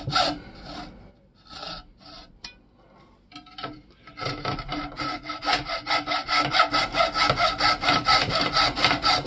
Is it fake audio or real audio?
real